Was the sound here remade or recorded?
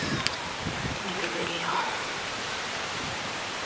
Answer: remade